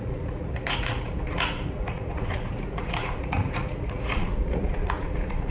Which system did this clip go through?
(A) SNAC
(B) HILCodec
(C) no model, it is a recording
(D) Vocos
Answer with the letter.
D